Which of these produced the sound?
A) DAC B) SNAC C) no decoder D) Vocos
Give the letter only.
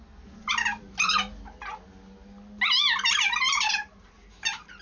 C